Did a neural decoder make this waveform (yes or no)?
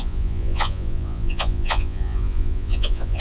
yes